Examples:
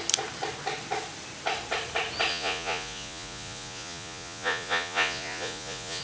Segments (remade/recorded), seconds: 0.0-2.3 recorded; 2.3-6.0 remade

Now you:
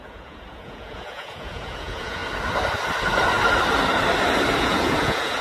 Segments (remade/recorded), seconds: 0.0-2.2 remade; 2.2-4.6 recorded; 4.6-5.4 remade

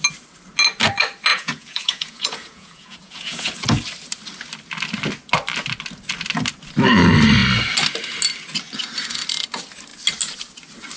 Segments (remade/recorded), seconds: 0.0-1.3 recorded; 1.3-3.5 remade; 3.5-11.0 recorded

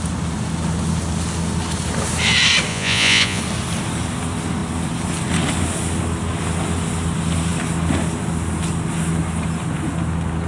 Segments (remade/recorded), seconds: 0.0-2.7 recorded; 2.7-3.4 remade; 3.4-10.5 recorded

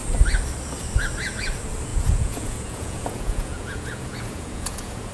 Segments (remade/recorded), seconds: 0.0-1.9 recorded; 1.9-5.1 remade

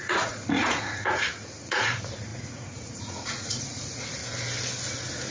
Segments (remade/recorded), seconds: 0.0-4.2 remade; 4.2-5.3 recorded

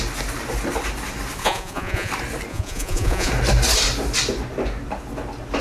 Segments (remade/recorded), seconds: 0.0-1.4 recorded; 1.4-2.1 remade; 2.1-2.5 recorded; 2.5-3.3 remade; 3.3-5.6 recorded